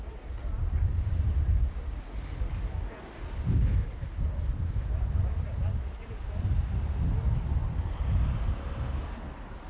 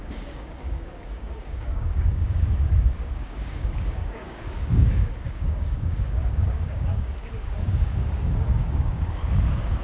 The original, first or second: first